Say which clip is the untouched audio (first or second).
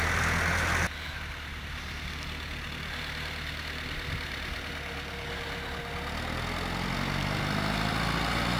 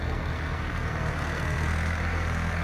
first